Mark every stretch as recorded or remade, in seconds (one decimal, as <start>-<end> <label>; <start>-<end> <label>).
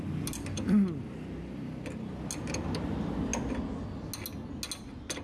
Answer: 0.0-5.2 recorded